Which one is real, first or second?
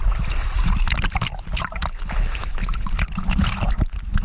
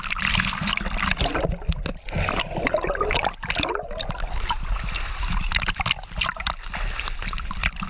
second